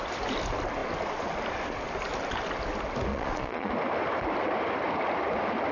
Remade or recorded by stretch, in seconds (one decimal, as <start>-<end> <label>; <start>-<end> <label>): 0.0-3.1 recorded; 3.1-3.7 remade; 3.7-5.7 recorded